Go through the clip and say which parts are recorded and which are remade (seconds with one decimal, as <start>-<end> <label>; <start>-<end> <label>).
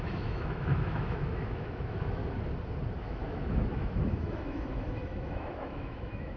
0.0-2.2 remade; 2.2-3.0 recorded; 3.0-6.4 remade